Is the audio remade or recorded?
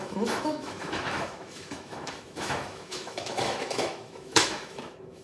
remade